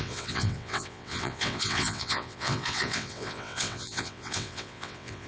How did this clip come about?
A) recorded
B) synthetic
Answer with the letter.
B